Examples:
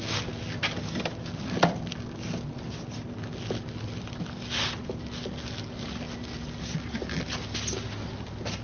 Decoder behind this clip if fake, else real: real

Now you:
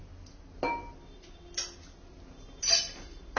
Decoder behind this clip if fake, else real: real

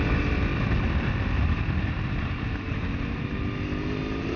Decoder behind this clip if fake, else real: real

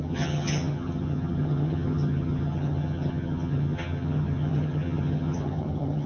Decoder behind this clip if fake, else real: fake, vocoder, HiFi-GAN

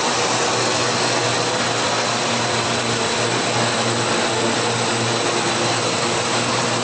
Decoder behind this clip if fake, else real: real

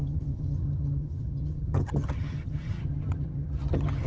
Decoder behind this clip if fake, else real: fake, vocoder, HiFi-GAN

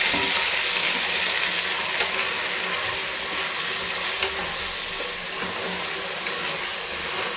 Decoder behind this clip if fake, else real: real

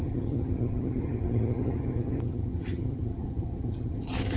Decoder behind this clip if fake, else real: fake, vocoder, HiFi-GAN